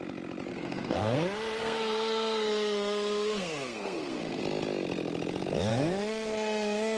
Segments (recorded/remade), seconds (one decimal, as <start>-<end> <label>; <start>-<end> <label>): 0.0-0.5 recorded; 0.5-4.4 remade; 4.4-5.7 recorded; 5.7-7.0 remade